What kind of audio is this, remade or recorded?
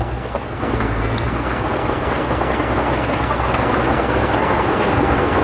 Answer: remade